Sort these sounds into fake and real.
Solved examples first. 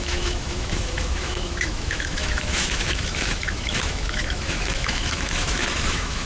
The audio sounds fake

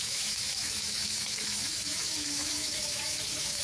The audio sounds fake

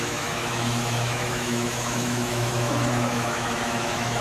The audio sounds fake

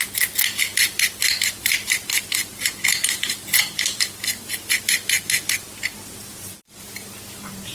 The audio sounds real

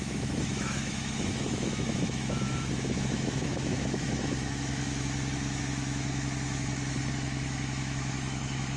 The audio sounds fake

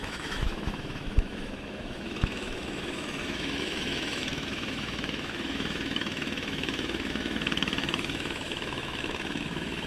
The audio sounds fake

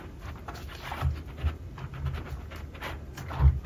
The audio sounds real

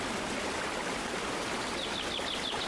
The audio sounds real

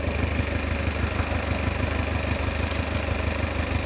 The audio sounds real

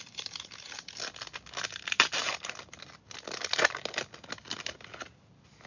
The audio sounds real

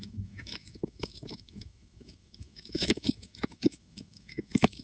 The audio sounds fake